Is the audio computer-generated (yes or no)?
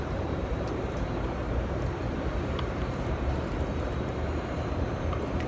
yes